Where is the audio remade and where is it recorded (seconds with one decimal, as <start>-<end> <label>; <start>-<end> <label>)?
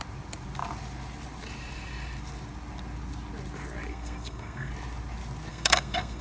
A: 0.0-3.9 recorded; 3.9-4.7 remade; 4.7-5.5 recorded; 5.5-6.2 remade